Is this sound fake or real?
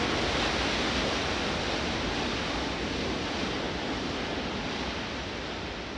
real